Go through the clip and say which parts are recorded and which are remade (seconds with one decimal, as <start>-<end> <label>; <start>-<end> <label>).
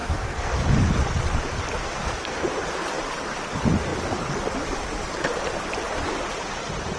0.0-0.5 remade; 0.5-1.8 recorded; 1.8-2.5 remade; 2.5-7.0 recorded